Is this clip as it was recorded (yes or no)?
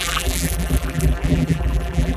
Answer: no